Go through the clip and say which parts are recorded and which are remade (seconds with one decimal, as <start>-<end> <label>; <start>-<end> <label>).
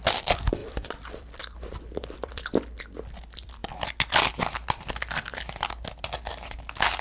0.0-0.6 recorded; 0.6-2.8 remade; 2.8-7.0 recorded